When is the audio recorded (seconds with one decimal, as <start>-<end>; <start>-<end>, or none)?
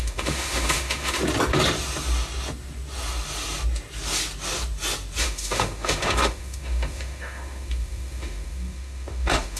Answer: 1.2-5.2